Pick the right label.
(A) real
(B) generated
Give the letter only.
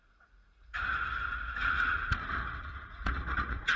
B